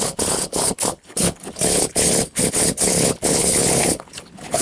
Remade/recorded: remade